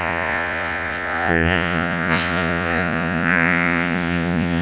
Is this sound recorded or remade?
remade